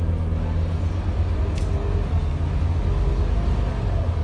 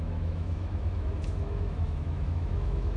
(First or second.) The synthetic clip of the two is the second